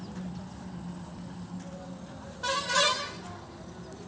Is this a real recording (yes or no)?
yes